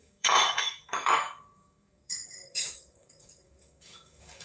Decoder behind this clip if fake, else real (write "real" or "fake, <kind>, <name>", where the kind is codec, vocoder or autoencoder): fake, codec, DAC